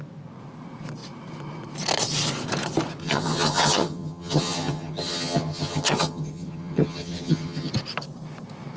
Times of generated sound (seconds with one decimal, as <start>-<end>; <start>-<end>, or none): 3.0-7.7